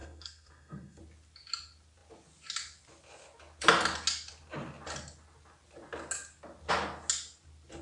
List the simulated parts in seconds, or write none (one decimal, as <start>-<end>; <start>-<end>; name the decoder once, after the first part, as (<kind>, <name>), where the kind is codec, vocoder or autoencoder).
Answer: 0.0-1.0 (codec, SNAC)